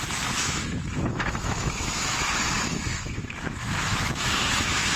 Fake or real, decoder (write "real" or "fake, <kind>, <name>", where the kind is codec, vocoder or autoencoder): fake, autoencoder, DAC-VAE